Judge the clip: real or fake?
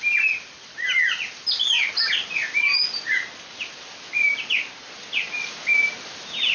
real